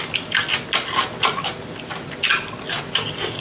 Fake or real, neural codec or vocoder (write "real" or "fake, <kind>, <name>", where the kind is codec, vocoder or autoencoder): real